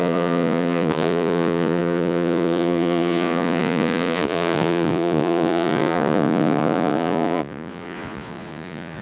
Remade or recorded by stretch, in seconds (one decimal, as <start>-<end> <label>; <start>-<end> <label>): 0.0-9.0 remade